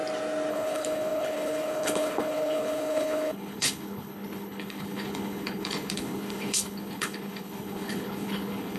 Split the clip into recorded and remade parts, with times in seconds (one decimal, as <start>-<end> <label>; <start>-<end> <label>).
0.0-0.5 recorded; 0.5-8.8 remade